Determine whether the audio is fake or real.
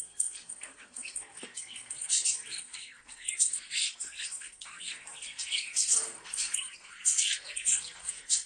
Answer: fake